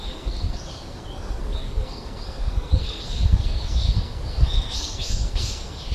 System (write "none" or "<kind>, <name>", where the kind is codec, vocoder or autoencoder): codec, SNAC